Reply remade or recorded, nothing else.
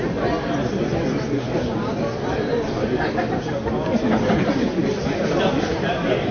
recorded